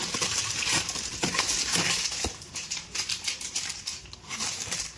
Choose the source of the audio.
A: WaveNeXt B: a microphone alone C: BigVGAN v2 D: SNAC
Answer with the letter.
C